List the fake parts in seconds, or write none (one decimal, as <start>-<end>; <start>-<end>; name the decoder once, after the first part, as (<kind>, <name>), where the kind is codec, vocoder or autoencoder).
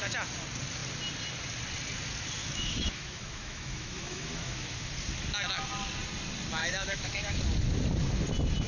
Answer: 2.4-4.9 (autoencoder, DAC-VAE); 6.6-7.4